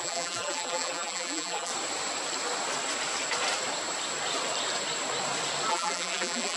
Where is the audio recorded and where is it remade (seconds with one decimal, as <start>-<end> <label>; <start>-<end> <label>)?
0.0-1.7 remade; 1.7-5.7 recorded; 5.7-6.6 remade